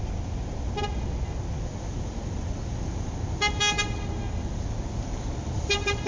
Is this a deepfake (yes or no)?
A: no